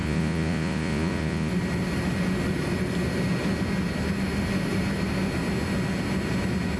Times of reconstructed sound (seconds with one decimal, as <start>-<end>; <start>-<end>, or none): 0.0-1.5